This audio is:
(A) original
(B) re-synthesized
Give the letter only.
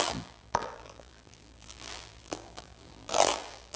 B